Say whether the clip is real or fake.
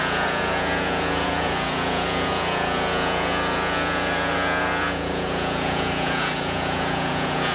fake